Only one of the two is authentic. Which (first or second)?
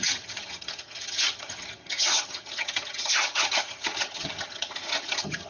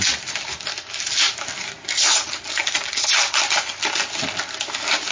second